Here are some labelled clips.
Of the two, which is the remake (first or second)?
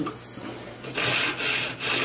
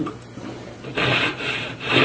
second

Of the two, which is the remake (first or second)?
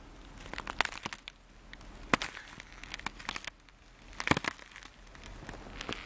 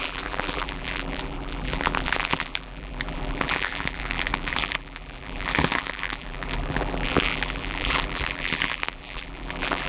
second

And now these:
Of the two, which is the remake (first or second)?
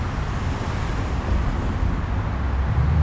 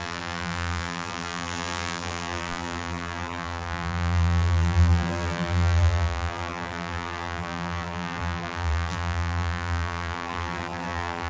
second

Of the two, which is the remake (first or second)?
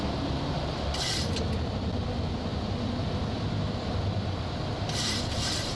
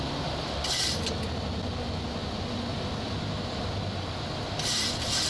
first